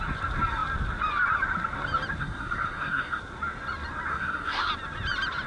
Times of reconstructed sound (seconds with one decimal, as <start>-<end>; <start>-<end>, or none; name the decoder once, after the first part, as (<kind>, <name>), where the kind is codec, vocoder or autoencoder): 2.2-3.2 (codec, SNAC); 4.1-4.7